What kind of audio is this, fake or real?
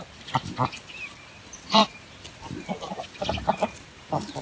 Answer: fake